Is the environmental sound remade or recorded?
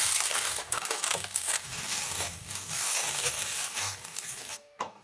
remade